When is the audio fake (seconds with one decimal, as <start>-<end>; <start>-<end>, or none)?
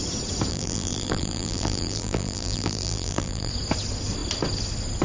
0.5-3.5